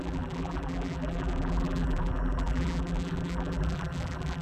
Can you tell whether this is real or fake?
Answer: fake